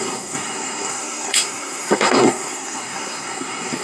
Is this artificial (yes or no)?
yes